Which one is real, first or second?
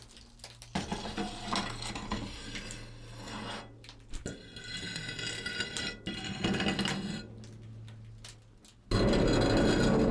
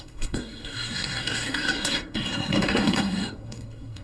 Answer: first